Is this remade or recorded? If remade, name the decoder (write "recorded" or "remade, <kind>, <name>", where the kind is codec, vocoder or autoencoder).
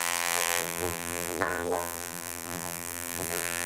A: remade, vocoder, BigVGAN v2